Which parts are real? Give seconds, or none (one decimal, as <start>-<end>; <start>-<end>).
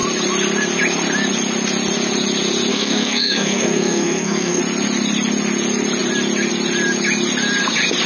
0.0-2.7; 4.6-8.1